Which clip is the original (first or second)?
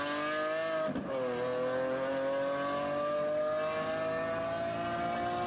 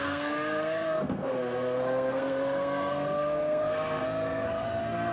first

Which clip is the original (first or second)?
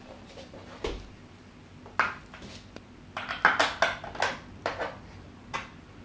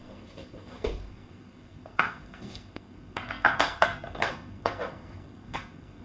first